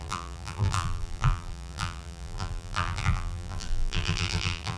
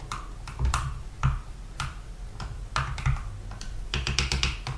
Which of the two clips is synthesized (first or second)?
first